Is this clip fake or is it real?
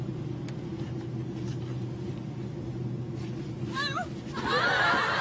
real